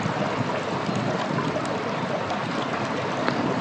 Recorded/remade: recorded